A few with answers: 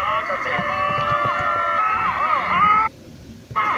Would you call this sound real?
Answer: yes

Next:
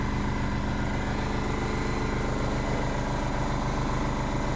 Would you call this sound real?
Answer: yes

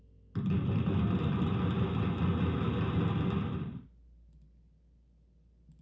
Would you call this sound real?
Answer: yes